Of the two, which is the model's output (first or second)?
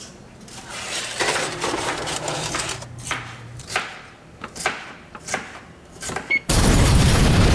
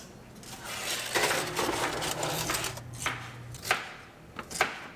first